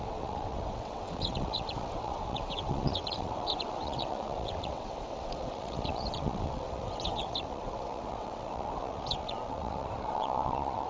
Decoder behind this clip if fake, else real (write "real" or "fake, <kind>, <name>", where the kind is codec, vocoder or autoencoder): fake, vocoder, WaveNeXt